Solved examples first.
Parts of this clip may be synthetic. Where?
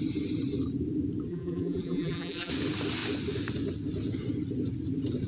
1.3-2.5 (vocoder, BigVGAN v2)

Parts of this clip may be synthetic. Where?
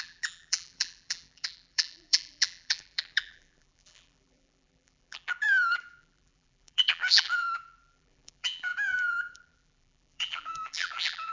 0.0-11.3 (vocoder, BigVGAN v2)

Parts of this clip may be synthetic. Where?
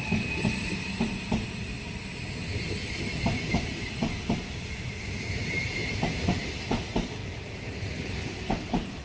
5.4-6.5 (vocoder, BigVGAN v2); 7.2-9.0